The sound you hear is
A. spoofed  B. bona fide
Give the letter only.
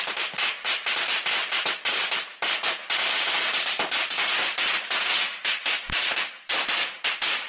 A